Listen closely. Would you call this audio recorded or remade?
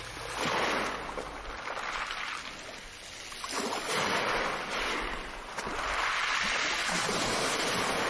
recorded